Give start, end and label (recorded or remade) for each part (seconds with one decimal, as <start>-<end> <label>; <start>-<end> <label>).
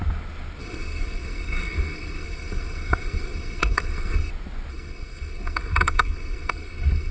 0.0-0.6 recorded; 0.6-4.3 remade; 4.3-4.7 recorded; 4.7-7.1 remade